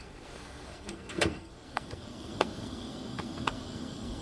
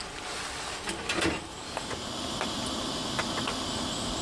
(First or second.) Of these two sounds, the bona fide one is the second